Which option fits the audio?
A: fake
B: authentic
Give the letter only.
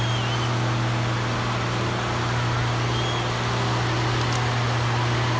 B